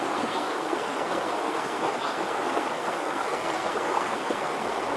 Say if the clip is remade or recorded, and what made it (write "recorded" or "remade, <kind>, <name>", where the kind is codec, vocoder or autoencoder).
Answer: remade, codec, SNAC